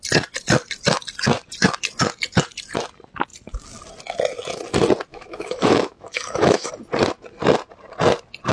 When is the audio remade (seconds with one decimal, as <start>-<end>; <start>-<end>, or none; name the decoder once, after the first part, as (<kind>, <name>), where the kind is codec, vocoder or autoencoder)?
5.1-6.7 (autoencoder, DAC-VAE)